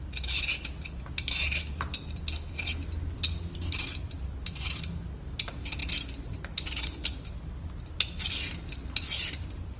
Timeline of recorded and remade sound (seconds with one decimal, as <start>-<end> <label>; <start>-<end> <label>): 0.0-9.8 recorded